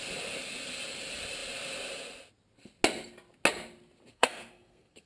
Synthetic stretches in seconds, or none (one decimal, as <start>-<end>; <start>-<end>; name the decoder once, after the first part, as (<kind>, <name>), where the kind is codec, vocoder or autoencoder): 4.1-5.1 (codec, SNAC)